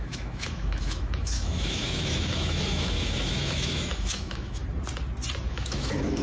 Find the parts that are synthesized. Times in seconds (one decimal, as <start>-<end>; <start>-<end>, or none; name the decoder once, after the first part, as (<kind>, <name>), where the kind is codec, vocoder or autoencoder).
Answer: 0.0-4.6 (autoencoder, DAC-VAE); 5.5-6.2